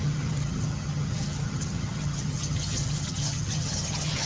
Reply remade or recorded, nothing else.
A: remade